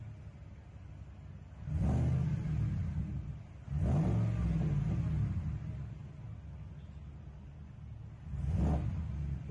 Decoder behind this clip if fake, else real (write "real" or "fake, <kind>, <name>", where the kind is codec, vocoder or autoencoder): real